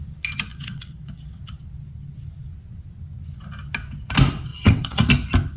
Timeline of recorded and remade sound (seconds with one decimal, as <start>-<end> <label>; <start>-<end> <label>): 0.0-0.5 recorded; 0.5-1.4 remade; 1.4-4.5 recorded; 4.5-5.1 remade; 5.1-5.6 recorded